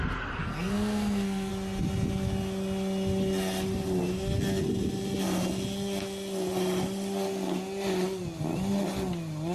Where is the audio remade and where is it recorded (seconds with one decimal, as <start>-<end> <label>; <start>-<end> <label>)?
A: 0.0-0.4 recorded; 0.4-1.5 remade; 1.5-9.5 recorded

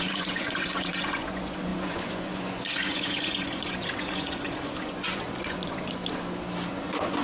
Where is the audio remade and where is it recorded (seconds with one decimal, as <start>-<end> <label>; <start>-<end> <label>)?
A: 0.0-6.0 remade; 6.0-6.7 recorded; 6.7-7.2 remade

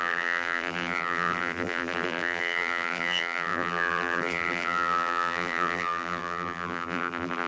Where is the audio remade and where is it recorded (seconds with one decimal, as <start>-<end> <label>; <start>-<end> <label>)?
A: 0.0-7.5 remade